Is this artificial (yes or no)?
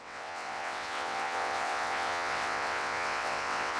yes